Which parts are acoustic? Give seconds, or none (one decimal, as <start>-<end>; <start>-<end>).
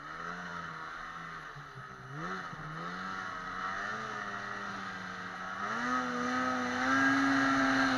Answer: 0.0-8.0